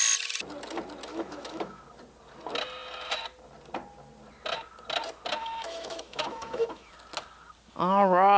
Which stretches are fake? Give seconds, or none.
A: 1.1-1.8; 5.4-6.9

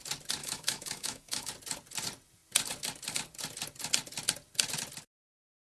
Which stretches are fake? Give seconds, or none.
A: 0.4-1.5

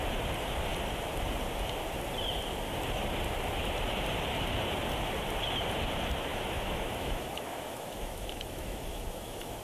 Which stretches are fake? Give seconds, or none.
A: 6.3-9.6